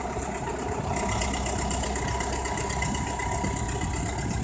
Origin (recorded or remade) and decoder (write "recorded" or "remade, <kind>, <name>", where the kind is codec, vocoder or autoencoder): recorded